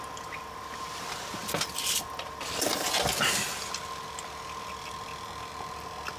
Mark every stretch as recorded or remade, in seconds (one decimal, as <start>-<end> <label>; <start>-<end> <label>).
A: 0.0-6.2 recorded

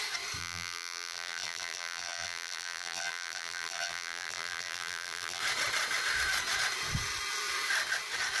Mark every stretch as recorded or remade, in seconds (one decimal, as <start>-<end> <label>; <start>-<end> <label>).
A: 0.0-0.4 recorded; 0.4-5.4 remade; 5.4-8.4 recorded

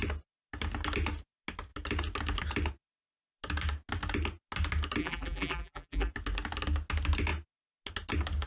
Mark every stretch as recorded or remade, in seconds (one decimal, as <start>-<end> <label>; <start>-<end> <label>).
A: 0.0-5.0 recorded; 5.0-6.1 remade; 6.1-8.5 recorded